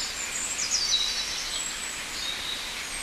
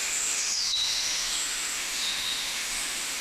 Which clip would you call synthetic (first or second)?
second